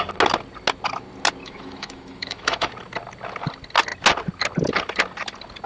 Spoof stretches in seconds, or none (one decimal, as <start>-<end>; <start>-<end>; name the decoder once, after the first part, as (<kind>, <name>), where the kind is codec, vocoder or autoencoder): 1.4-2.7 (autoencoder, DAC-VAE)